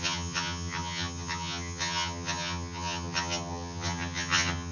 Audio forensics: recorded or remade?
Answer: remade